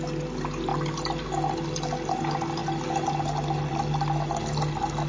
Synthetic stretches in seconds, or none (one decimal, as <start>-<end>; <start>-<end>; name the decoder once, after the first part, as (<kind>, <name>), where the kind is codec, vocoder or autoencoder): none